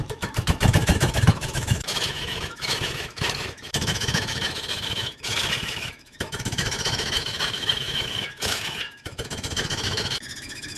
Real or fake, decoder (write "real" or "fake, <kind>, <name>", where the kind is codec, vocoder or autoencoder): fake, autoencoder, DAC-VAE